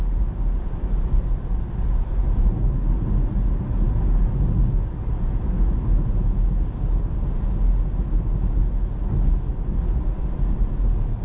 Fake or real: real